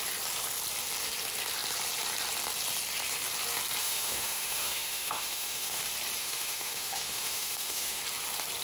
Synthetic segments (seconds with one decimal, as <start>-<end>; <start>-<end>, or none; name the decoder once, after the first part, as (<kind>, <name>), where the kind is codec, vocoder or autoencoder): 3.8-5.8 (autoencoder, DAC-VAE); 6.2-8.0